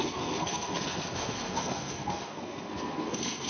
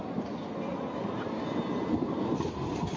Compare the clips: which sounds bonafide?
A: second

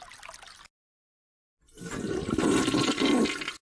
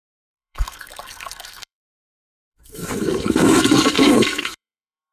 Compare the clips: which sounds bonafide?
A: first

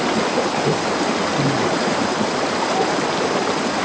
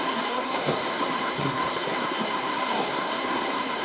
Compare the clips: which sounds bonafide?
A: first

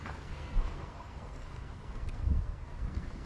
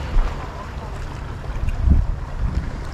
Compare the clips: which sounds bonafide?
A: second